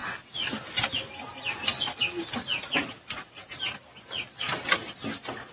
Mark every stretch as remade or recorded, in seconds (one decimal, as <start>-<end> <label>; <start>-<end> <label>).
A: 0.0-5.5 recorded